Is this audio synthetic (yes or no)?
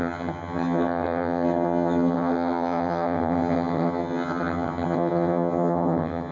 yes